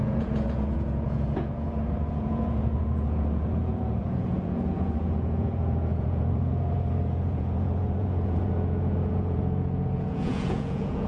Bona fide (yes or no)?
no